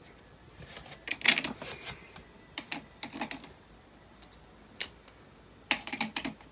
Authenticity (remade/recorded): recorded